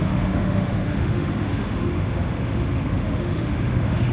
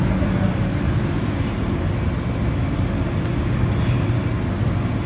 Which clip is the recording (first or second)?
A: second